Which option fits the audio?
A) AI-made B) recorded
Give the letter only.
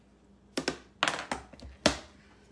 B